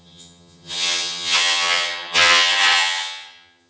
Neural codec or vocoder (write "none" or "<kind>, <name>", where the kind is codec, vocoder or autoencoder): vocoder, HiFi-GAN